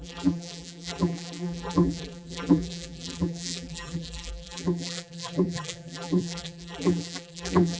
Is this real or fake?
fake